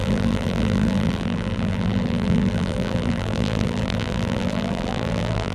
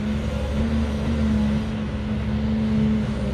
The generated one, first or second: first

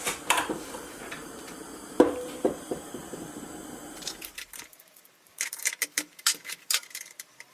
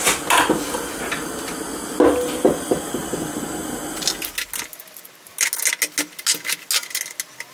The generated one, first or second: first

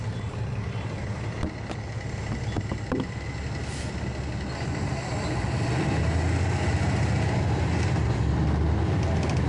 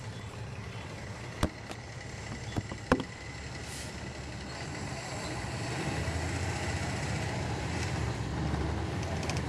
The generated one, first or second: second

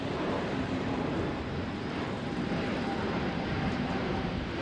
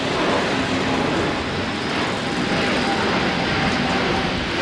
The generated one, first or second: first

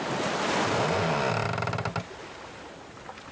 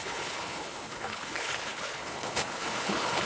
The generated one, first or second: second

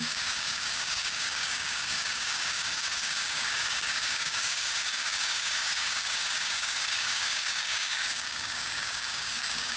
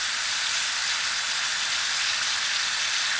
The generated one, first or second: first